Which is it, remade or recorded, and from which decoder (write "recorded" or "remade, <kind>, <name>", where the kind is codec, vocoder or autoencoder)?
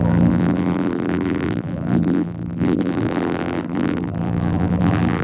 remade, vocoder, BigVGAN v2